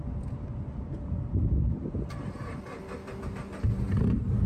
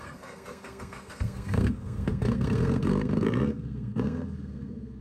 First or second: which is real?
first